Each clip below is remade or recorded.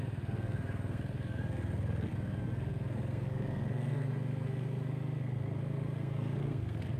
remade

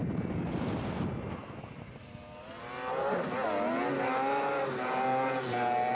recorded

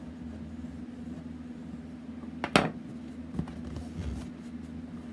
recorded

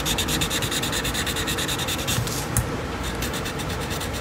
recorded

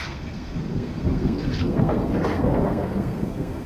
remade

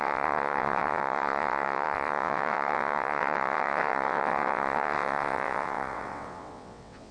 remade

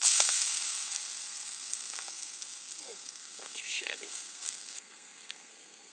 remade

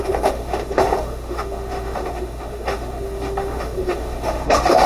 remade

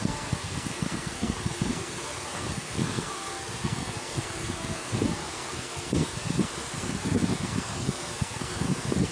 remade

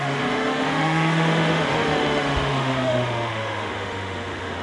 remade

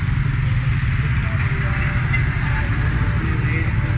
recorded